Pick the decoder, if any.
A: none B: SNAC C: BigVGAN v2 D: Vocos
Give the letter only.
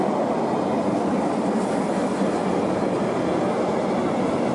A